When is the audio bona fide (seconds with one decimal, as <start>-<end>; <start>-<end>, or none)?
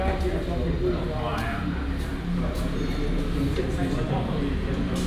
0.0-1.3; 4.4-5.1